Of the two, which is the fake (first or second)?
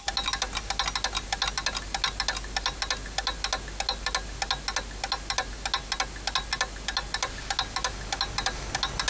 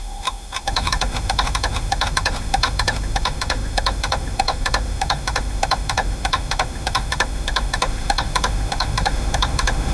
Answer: second